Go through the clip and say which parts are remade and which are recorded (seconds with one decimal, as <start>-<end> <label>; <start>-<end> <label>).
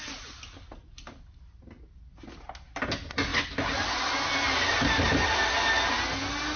0.0-6.6 recorded